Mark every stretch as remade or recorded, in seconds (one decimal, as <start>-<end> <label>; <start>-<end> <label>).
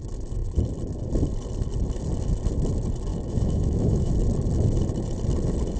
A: 0.0-3.1 recorded; 3.1-4.1 remade; 4.1-5.8 recorded